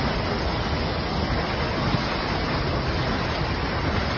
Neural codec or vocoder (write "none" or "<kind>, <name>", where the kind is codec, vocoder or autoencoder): none